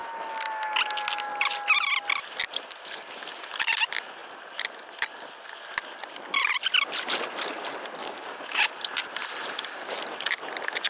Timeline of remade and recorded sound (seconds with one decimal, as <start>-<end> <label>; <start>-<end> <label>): 0.0-8.0 recorded; 8.0-8.6 remade; 8.6-10.9 recorded